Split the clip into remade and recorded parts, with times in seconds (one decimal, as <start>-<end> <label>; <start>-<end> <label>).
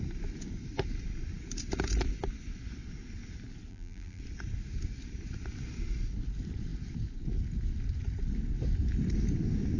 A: 0.0-3.7 recorded; 3.7-4.2 remade; 4.2-9.8 recorded